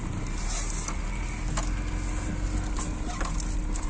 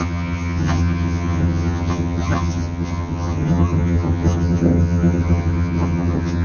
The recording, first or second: first